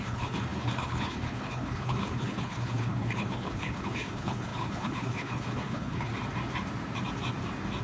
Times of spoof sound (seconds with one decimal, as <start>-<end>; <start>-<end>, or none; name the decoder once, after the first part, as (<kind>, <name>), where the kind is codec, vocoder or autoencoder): 0.0-6.1 (codec, HILCodec)